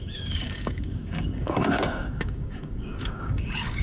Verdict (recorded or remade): remade